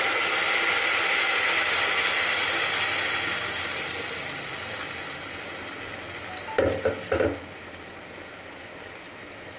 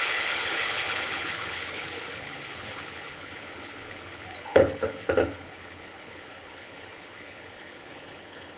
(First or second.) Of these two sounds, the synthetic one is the second